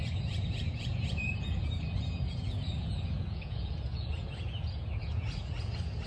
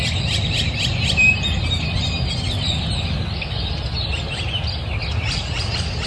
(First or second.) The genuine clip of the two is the second